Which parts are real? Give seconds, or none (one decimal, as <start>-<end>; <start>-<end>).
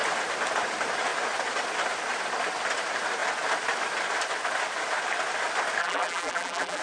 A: 0.0-5.8